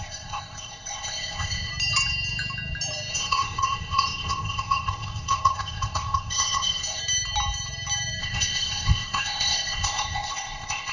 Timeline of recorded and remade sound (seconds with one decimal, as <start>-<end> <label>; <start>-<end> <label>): 0.0-1.7 remade; 1.7-3.1 recorded; 3.1-7.0 remade; 7.0-8.2 recorded; 8.2-10.9 remade